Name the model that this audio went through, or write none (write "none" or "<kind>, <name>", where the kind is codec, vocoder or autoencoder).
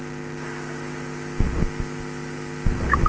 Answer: none